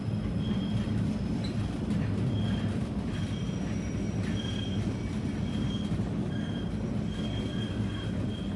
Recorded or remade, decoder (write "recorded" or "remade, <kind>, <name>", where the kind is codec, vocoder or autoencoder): recorded